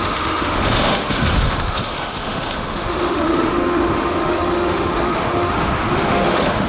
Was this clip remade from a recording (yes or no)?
yes